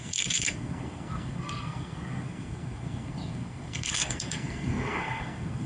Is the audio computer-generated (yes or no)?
yes